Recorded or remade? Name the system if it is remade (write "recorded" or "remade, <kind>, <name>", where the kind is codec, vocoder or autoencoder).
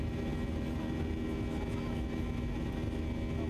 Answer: recorded